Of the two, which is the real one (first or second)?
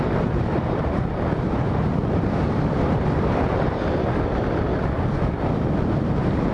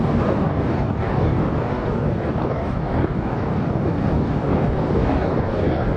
first